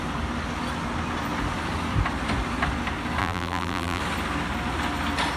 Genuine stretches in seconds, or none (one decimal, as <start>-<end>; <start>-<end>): 0.0-3.2; 4.0-5.4